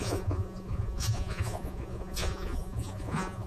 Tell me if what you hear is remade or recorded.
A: remade